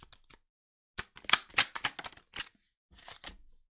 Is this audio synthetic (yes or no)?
no